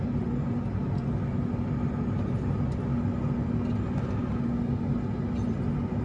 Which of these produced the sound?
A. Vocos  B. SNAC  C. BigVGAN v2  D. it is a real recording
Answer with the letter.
D